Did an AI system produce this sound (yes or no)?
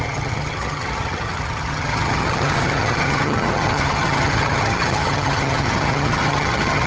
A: yes